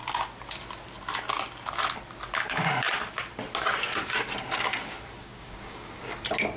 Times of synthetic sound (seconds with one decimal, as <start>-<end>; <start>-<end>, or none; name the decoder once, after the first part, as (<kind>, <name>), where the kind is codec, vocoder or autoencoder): 5.2-5.9 (codec, DAC)